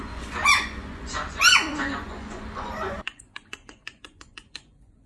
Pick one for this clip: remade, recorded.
remade